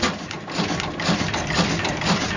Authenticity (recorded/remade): recorded